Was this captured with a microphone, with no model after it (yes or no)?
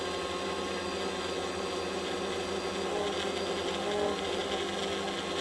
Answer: yes